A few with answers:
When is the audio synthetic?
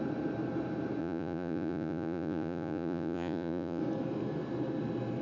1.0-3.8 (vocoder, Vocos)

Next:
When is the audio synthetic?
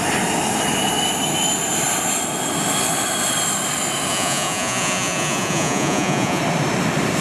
4.1-6.4 (vocoder, Vocos)